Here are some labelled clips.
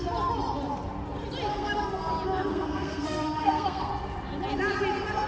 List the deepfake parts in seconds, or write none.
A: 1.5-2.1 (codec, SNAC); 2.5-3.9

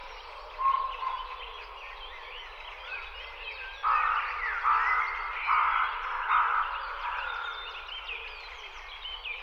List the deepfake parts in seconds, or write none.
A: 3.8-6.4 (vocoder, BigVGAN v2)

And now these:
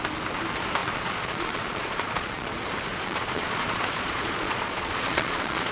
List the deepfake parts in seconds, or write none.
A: 0.8-2.5 (vocoder, Vocos); 2.9-5.7

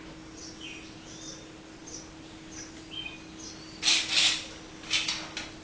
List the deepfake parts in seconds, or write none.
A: none